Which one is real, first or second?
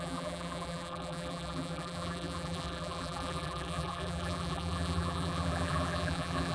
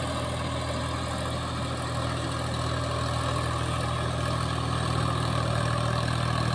second